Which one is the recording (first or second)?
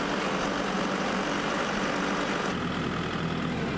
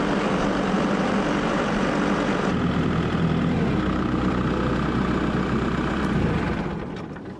first